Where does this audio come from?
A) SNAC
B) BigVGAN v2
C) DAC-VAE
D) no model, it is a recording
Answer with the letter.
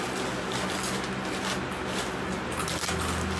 D